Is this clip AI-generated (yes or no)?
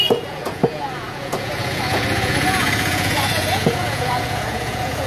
yes